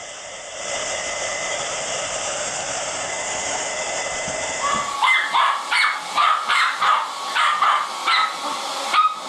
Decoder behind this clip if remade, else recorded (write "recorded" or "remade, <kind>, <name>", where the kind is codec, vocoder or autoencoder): remade, vocoder, BigVGAN v2